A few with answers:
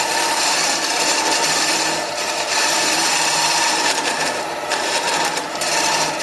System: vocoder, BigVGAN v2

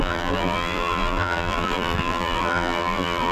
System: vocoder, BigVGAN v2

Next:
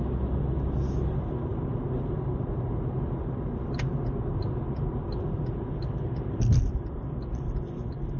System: none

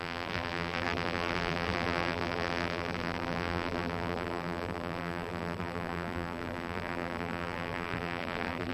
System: vocoder, BigVGAN v2